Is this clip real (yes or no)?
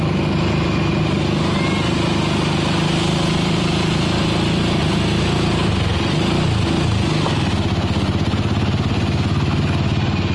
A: yes